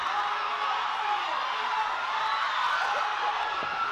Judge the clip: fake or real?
real